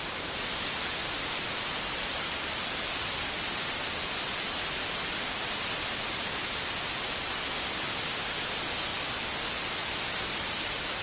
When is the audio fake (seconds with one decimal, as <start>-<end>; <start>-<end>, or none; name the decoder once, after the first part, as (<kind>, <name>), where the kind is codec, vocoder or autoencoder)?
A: 1.0-2.8 (vocoder, BigVGAN v2); 4.0-7.0; 8.9-9.6